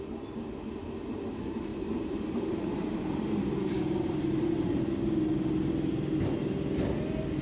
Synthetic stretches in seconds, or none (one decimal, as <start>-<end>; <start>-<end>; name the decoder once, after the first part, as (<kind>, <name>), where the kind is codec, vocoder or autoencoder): 1.7-4.8 (vocoder, BigVGAN v2)